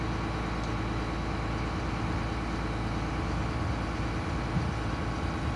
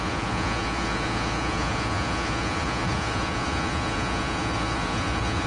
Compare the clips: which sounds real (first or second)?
first